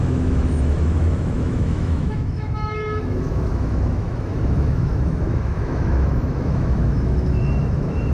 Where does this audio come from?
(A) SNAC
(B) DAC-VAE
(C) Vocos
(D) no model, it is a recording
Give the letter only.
B